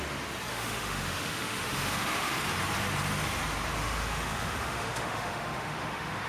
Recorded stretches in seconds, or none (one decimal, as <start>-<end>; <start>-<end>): 0.0-0.5; 2.4-3.8